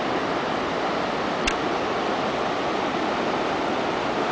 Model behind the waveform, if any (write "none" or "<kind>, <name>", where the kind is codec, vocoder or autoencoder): none